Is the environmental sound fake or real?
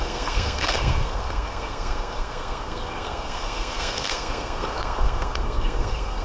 fake